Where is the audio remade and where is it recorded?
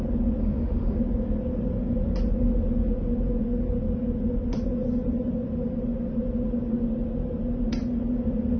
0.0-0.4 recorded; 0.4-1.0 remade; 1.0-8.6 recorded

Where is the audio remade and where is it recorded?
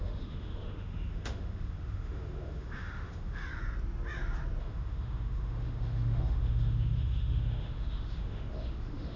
0.0-3.4 remade; 3.4-4.6 recorded; 4.6-9.2 remade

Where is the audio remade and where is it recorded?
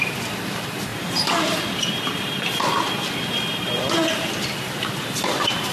0.0-5.7 recorded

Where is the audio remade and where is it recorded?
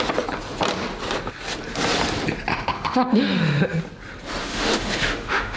0.0-2.5 recorded; 2.5-3.8 remade; 3.8-4.4 recorded; 4.4-5.6 remade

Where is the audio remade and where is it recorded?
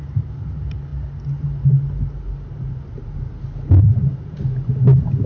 0.0-5.3 recorded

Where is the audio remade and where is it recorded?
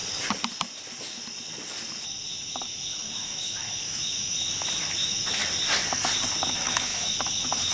0.0-2.3 recorded; 2.3-5.4 remade; 5.4-6.4 recorded; 6.4-7.7 remade